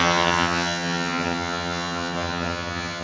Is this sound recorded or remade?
remade